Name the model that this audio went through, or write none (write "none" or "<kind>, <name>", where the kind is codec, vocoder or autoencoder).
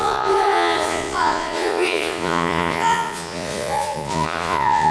vocoder, Vocos